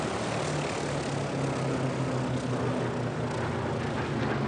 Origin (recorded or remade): recorded